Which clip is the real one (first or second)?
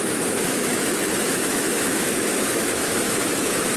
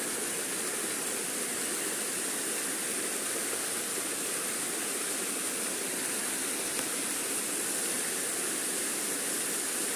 second